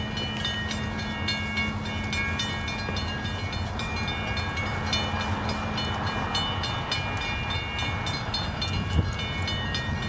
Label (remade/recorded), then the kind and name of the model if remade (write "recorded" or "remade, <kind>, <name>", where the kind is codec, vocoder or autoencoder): recorded